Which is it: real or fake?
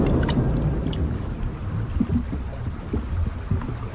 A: real